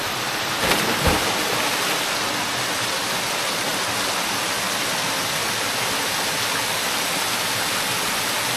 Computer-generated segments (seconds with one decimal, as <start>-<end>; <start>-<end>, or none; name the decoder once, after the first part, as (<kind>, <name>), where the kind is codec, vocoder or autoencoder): none